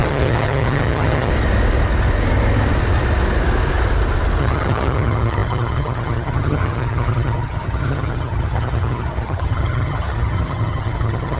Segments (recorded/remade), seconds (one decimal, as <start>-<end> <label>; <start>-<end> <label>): 0.0-1.3 remade; 1.3-4.4 recorded; 4.4-11.4 remade